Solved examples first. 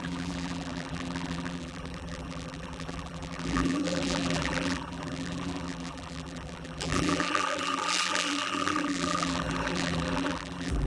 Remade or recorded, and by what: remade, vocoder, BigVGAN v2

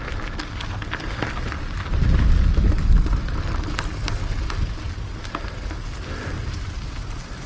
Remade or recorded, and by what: recorded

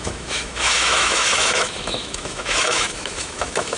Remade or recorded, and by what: remade, autoencoder, DAC-VAE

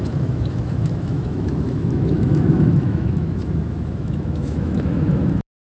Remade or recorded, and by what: remade, autoencoder, DAC-VAE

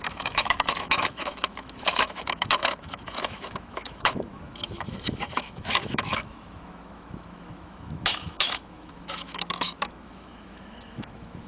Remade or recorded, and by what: remade, autoencoder, DAC-VAE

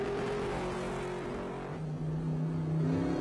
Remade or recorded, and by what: recorded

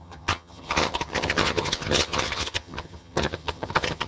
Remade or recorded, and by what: remade, vocoder, HiFi-GAN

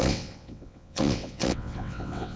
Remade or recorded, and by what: remade, vocoder, WaveNeXt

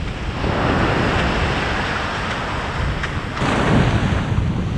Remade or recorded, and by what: recorded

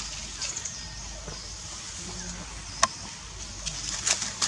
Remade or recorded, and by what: recorded